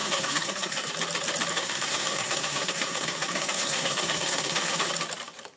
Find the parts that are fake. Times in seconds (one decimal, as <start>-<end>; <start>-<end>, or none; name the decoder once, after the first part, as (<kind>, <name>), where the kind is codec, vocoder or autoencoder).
0.0-0.9 (codec, SNAC); 1.5-4.9